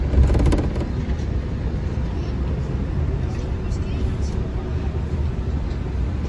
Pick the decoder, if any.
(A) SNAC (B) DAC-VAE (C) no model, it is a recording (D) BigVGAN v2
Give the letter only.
C